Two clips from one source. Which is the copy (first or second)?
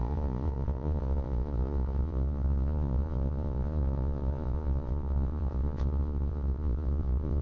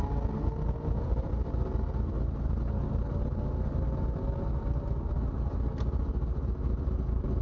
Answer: first